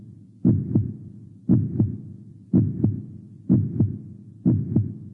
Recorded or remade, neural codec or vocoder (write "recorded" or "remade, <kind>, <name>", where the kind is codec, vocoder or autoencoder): remade, vocoder, Vocos